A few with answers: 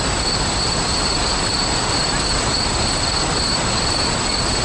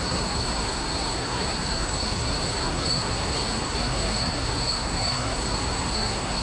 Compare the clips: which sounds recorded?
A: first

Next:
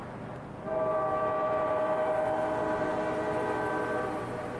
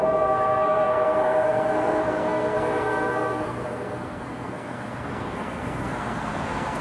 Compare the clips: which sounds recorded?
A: first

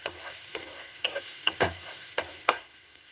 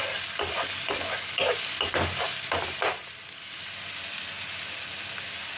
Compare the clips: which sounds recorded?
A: second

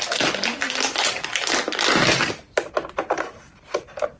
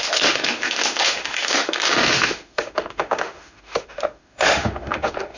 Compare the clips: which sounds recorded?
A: first